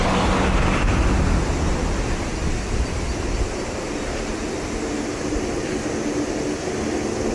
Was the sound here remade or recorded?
recorded